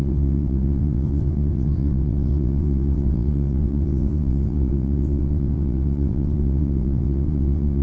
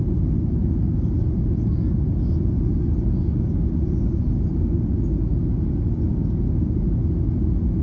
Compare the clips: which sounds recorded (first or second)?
second